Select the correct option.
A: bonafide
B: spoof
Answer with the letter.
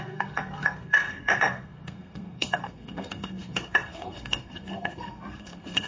B